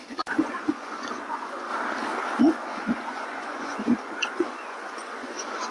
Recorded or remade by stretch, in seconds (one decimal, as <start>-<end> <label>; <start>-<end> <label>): 0.0-1.7 remade; 1.7-2.4 recorded; 2.4-5.7 remade